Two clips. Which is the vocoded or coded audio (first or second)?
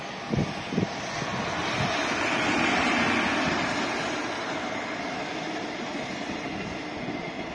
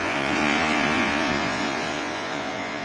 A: second